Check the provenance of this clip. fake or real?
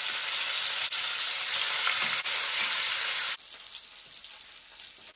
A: real